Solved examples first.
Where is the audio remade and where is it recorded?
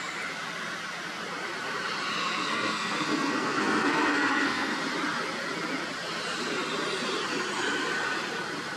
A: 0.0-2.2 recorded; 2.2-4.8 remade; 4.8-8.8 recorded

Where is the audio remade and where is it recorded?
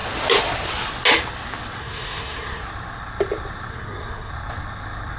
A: 0.0-1.8 recorded; 1.8-2.6 remade; 2.6-3.7 recorded; 3.7-4.3 remade; 4.3-5.2 recorded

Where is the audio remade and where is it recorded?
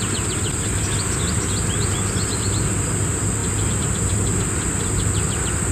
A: 0.0-5.7 recorded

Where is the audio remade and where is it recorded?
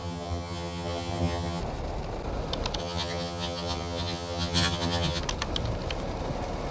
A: 0.0-1.6 remade; 1.6-2.8 recorded; 2.8-5.2 remade; 5.2-6.7 recorded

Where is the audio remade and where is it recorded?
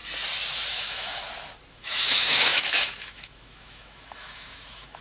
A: 0.0-0.7 recorded; 0.7-1.2 remade; 1.2-1.7 recorded; 1.7-5.0 remade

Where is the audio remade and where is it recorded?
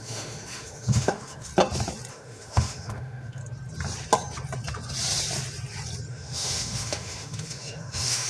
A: 0.0-1.5 remade; 1.5-2.1 recorded; 2.1-3.4 remade; 3.4-6.1 recorded; 6.1-8.3 remade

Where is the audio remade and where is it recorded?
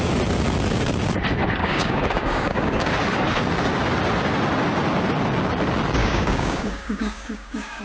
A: 0.0-1.6 recorded; 1.6-2.9 remade; 2.9-6.0 recorded; 6.0-7.8 remade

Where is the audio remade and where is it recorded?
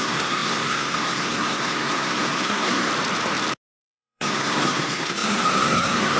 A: 0.0-2.9 remade; 2.9-3.8 recorded; 3.8-6.2 remade